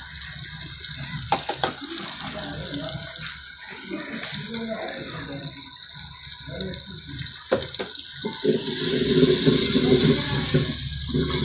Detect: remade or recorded recorded